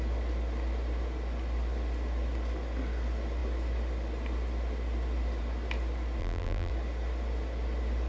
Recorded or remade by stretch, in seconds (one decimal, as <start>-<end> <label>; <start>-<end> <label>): 0.0-6.2 recorded; 6.2-6.7 remade; 6.7-8.1 recorded